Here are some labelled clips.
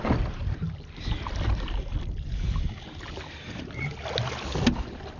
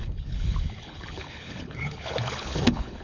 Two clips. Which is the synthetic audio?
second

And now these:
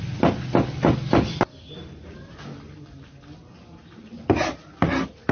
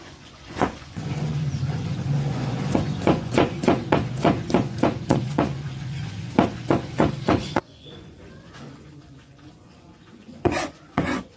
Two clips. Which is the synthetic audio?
second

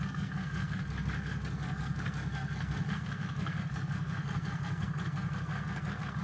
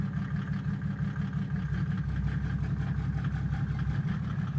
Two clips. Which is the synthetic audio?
first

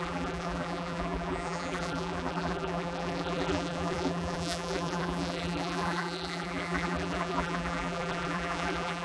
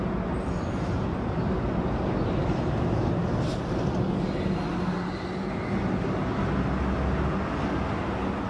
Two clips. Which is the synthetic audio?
first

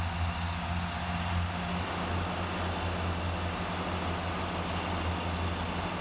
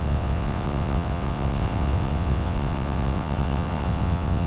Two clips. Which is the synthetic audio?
second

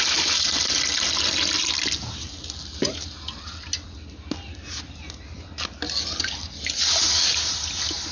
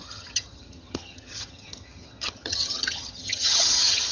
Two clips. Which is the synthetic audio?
second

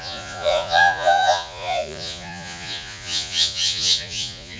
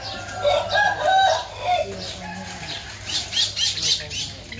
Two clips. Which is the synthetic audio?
first